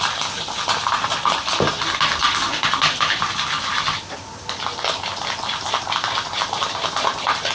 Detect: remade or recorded recorded